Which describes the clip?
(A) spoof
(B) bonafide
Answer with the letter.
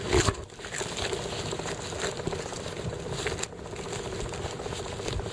A